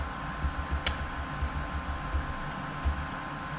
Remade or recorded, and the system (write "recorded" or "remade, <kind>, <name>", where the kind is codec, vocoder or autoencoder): recorded